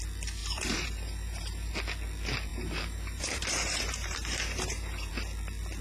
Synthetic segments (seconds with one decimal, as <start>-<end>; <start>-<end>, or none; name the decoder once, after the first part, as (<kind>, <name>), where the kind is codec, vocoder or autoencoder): 0.4-1.7 (vocoder, BigVGAN v2); 2.5-5.1

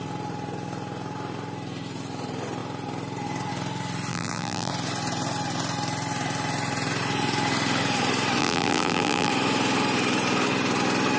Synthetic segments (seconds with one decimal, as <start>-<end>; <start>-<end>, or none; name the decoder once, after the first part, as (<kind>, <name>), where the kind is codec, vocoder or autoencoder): 4.1-4.7 (vocoder, BigVGAN v2); 8.4-9.3

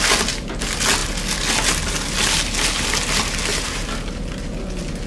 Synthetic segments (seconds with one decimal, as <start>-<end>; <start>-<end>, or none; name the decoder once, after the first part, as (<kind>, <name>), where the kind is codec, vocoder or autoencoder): 3.5-4.6 (vocoder, BigVGAN v2)

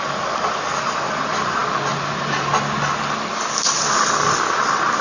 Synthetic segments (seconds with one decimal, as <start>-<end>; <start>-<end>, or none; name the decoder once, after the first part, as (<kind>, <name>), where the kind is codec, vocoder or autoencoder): 0.0-1.6 (vocoder, BigVGAN v2); 4.6-5.0

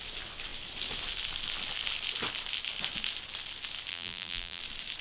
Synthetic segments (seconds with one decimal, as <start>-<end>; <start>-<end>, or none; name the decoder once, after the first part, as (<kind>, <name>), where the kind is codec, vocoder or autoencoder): 3.9-4.6 (vocoder, BigVGAN v2)

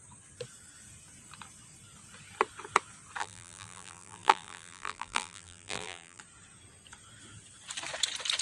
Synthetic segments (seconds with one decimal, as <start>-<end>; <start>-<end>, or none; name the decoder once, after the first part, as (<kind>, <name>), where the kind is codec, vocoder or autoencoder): 3.2-6.2 (vocoder, BigVGAN v2)

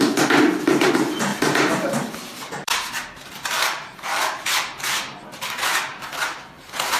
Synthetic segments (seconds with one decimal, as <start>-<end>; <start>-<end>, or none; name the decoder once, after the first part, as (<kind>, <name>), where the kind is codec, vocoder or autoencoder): 1.3-5.2 (vocoder, BigVGAN v2)

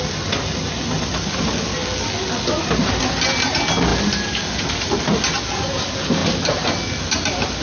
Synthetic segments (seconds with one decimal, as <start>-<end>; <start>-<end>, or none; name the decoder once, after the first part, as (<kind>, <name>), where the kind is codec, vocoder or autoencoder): none